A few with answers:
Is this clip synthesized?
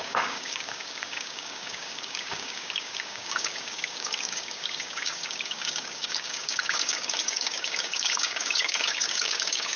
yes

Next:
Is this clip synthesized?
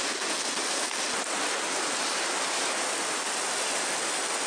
no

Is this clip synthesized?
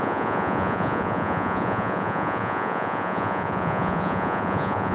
yes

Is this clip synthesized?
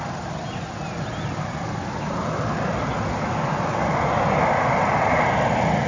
no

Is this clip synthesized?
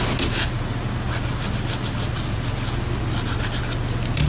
no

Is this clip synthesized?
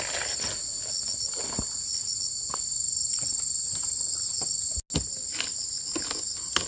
no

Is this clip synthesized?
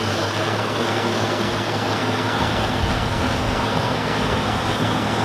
yes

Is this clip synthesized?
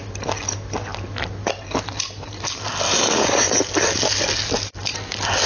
no